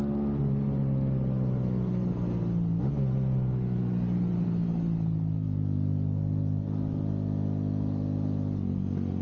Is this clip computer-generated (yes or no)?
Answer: no